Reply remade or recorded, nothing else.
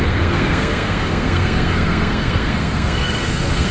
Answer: remade